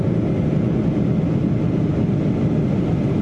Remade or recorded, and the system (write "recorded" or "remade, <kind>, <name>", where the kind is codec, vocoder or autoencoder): recorded